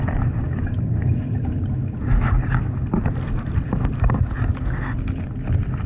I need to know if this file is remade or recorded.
recorded